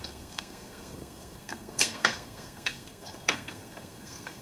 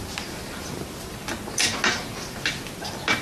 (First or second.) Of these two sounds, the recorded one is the second